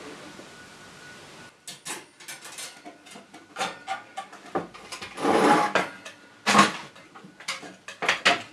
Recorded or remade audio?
recorded